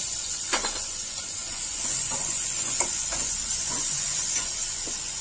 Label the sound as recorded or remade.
remade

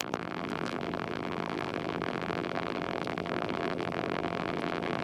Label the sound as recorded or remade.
remade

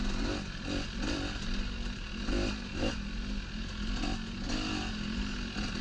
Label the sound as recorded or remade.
recorded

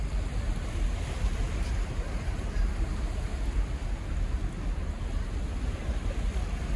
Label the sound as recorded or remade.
recorded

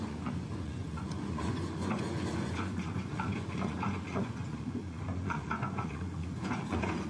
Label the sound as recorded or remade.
remade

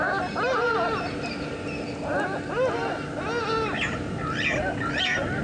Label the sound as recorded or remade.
recorded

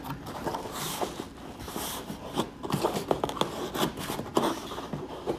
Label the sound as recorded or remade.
recorded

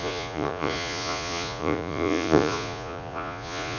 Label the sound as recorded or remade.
remade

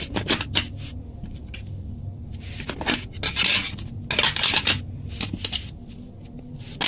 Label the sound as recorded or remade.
recorded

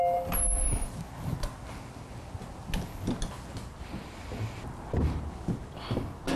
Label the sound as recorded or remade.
recorded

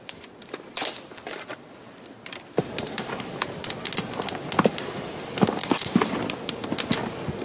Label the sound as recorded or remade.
recorded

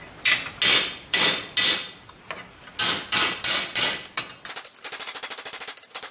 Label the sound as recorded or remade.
recorded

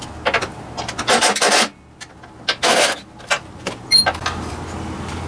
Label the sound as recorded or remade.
recorded